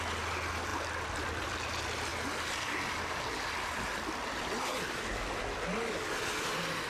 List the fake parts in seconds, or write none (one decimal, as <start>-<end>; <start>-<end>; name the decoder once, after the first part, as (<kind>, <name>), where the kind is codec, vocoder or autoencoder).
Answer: none